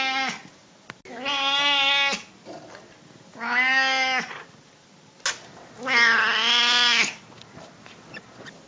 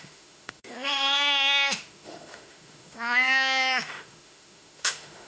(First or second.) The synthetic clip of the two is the second